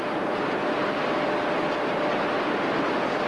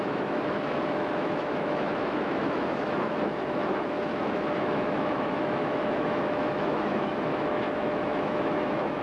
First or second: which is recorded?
first